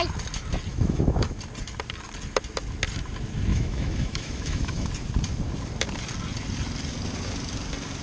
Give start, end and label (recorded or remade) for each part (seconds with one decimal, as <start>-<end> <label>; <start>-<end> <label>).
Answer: 0.0-0.7 recorded; 0.7-1.4 remade; 1.4-3.5 recorded; 3.5-4.9 remade; 4.9-8.0 recorded